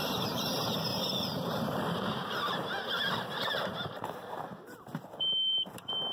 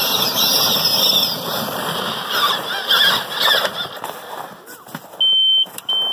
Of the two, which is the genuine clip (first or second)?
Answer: second